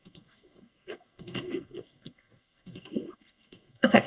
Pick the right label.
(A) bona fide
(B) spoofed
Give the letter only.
B